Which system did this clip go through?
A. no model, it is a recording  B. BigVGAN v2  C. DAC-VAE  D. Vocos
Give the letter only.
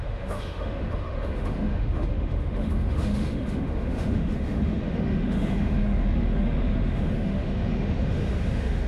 C